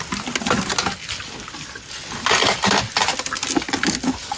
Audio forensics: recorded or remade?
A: recorded